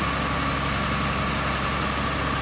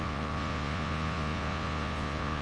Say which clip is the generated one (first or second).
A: second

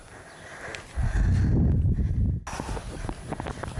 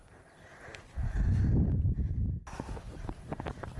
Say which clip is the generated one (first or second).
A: second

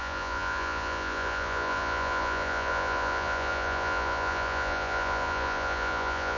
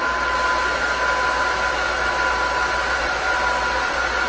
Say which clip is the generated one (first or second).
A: first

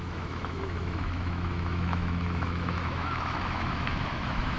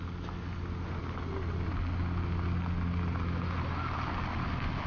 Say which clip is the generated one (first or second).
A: first